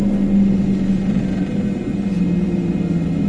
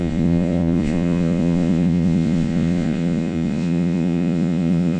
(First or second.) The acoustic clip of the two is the first